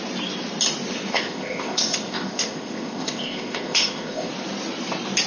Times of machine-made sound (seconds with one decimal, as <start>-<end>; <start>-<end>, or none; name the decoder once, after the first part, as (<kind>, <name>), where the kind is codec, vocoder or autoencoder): 1.1-4.3 (codec, ZipCodec)

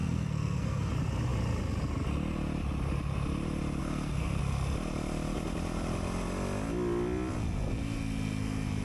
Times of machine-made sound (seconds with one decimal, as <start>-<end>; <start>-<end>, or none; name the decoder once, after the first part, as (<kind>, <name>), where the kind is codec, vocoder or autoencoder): 0.0-0.9 (codec, SNAC); 3.8-4.4

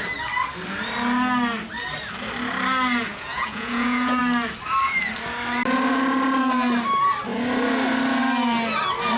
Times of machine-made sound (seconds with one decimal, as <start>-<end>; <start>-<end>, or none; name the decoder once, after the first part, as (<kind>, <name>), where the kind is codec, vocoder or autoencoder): 3.1-4.2 (vocoder, Vocos)

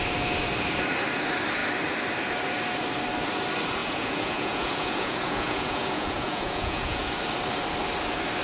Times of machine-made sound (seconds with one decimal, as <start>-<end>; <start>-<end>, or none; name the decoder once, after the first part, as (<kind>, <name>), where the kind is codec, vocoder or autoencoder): 3.8-7.2 (vocoder, Vocos)